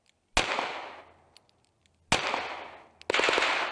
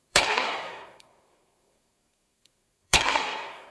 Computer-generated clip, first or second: second